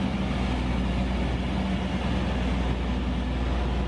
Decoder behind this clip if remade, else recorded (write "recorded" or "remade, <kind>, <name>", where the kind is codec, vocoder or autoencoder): recorded